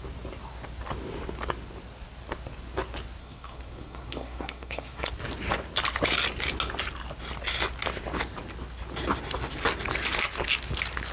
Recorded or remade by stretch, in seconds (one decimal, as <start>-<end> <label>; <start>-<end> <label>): 0.0-3.2 recorded; 3.2-5.1 remade; 5.1-11.1 recorded